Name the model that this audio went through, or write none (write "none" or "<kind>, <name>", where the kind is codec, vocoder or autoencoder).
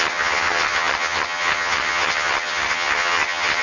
vocoder, HiFi-GAN